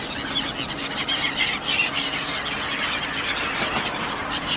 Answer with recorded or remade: recorded